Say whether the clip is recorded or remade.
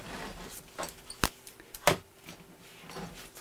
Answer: recorded